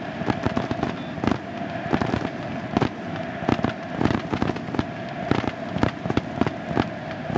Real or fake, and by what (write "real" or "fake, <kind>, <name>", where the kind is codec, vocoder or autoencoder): real